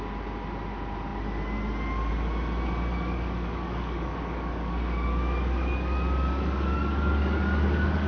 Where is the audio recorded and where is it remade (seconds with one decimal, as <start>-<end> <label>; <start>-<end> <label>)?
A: 0.0-2.9 recorded; 2.9-8.1 remade